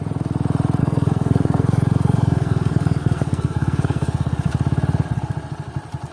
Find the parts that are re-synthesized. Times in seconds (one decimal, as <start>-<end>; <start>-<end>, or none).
0.8-4.5